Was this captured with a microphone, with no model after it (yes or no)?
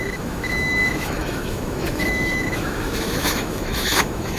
no